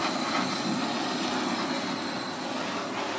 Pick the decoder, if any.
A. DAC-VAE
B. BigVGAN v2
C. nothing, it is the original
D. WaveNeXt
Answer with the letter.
C